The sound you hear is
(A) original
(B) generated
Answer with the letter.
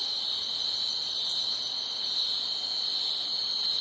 B